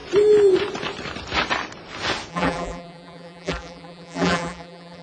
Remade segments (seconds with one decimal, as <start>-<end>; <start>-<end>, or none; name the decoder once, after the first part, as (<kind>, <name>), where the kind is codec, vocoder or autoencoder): 2.3-5.0 (vocoder, BigVGAN v2)